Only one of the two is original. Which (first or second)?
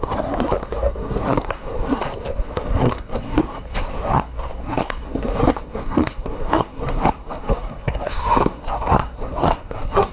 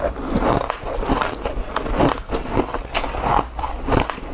second